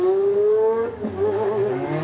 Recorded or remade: remade